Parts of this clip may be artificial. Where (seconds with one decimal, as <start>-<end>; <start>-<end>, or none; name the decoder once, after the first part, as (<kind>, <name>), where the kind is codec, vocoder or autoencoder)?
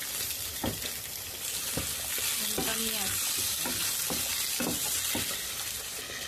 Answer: none